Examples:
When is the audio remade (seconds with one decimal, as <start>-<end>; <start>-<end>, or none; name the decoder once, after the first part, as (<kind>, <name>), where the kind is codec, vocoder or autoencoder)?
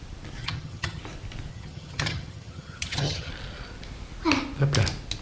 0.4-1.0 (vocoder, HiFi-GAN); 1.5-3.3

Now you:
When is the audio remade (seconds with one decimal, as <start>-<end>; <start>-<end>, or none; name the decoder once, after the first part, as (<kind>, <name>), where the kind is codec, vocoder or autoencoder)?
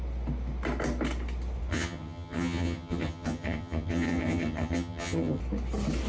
1.7-5.4 (vocoder, HiFi-GAN)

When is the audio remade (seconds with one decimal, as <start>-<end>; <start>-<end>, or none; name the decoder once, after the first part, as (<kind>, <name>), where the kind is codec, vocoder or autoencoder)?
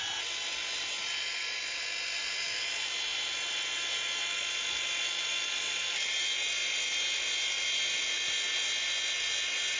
none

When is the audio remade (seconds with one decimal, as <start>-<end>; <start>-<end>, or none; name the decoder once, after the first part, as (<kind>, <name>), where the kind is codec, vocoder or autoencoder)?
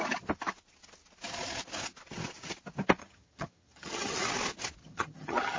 3.0-4.3 (vocoder, HiFi-GAN); 4.8-5.6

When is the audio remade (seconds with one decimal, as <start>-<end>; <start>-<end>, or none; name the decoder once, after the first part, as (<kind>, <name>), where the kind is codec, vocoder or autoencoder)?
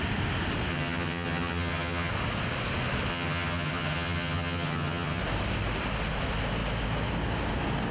0.7-2.1 (vocoder, HiFi-GAN); 3.1-5.2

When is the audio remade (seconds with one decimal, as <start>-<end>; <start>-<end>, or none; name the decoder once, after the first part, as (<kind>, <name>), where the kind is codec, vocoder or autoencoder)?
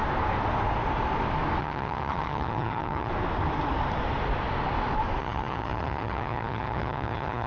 1.6-3.1 (vocoder, HiFi-GAN); 5.2-7.5